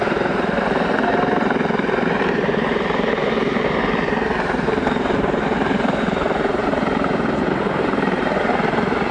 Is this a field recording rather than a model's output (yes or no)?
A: no